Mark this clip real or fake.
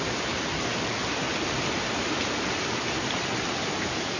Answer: real